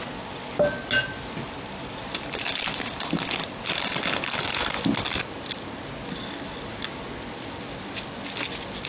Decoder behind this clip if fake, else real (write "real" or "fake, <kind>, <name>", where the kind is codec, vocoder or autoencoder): real